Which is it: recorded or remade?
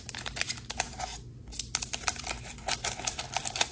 recorded